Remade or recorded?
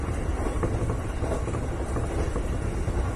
recorded